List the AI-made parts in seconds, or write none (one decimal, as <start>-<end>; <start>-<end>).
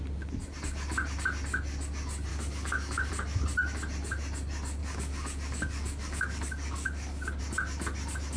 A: 2.3-3.1; 4.8-7.4